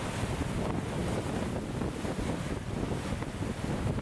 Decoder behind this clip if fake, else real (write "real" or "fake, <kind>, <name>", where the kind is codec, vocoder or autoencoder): real